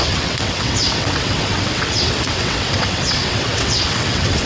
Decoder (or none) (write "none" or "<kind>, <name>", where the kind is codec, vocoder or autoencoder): vocoder, WaveNeXt